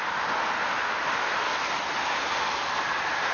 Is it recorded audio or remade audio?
recorded